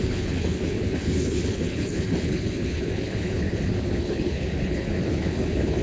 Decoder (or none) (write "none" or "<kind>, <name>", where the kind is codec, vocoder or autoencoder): codec, HILCodec